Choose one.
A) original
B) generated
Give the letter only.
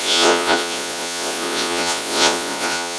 B